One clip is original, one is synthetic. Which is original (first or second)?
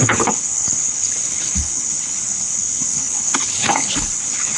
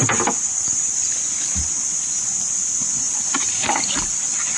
second